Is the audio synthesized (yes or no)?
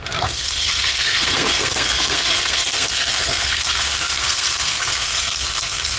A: yes